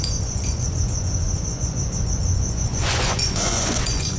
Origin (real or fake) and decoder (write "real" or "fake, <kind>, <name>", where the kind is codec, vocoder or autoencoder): fake, vocoder, Vocos